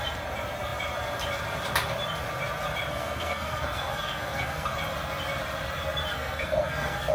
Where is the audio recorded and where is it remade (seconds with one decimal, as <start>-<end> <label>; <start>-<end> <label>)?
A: 0.0-2.9 recorded; 2.9-4.8 remade; 4.8-6.1 recorded; 6.1-7.1 remade